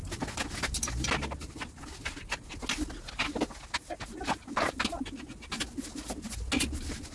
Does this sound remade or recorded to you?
recorded